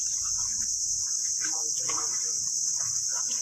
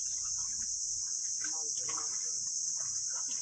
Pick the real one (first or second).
second